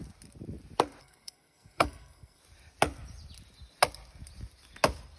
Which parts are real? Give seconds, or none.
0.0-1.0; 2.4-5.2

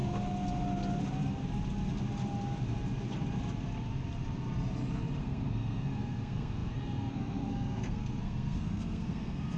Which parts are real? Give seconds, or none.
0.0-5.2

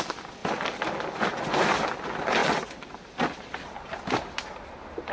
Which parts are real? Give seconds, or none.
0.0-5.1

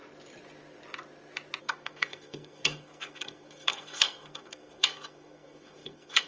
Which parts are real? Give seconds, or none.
0.0-1.6